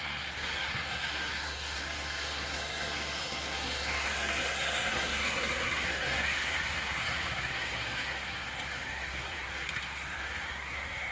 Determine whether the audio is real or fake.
fake